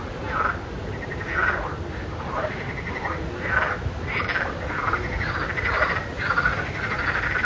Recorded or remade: recorded